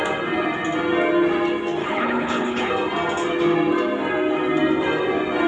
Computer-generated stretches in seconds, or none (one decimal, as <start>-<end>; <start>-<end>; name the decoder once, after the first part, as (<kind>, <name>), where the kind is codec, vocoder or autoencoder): 1.8-2.7 (codec, HILCodec)